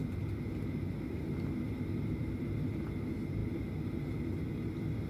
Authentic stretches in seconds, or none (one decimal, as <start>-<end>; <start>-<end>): 0.0-5.1